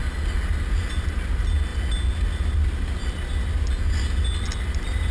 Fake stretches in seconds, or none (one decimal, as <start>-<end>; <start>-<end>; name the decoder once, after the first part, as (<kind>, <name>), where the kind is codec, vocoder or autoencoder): none